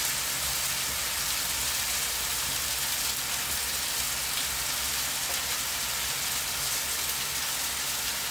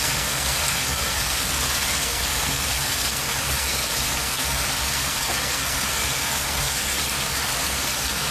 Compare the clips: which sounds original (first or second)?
first